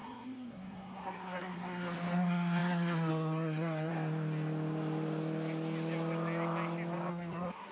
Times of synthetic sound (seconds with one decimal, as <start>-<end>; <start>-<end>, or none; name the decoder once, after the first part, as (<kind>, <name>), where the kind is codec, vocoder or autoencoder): 0.0-3.9 (codec, SNAC); 7.1-7.7

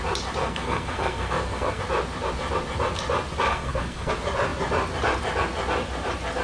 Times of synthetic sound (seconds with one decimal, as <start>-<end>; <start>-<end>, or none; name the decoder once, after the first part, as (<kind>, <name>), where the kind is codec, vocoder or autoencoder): 0.4-1.8 (codec, SNAC); 3.5-4.1

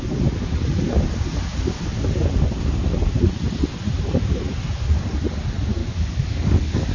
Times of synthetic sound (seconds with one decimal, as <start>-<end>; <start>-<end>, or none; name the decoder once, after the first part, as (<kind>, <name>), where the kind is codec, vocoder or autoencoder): 5.8-6.9 (codec, DAC)

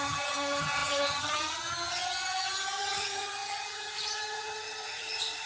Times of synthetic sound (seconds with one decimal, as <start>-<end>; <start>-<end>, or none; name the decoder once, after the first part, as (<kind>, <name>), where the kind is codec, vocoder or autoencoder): 0.0-5.5 (vocoder, HiFi-GAN)

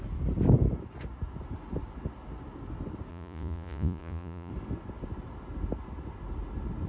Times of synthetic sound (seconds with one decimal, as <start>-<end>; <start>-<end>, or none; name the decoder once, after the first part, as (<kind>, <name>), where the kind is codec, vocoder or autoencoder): 3.1-4.5 (vocoder, Vocos)

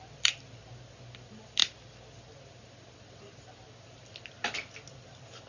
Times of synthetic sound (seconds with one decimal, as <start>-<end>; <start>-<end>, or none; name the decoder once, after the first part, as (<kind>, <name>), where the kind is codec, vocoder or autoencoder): none

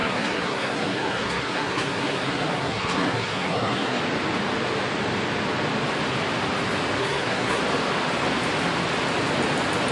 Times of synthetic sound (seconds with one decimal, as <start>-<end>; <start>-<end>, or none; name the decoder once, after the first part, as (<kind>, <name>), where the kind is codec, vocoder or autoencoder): 0.0-4.0 (codec, SNAC); 7.0-7.6

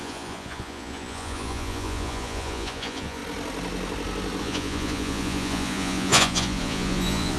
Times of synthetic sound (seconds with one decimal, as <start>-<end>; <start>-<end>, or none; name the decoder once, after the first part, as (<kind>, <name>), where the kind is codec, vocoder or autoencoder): 0.0-3.2 (vocoder, Vocos); 4.4-7.4